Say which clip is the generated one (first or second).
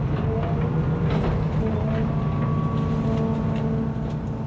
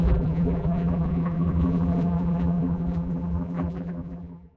second